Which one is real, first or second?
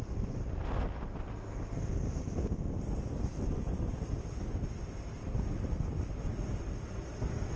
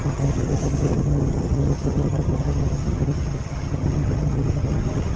first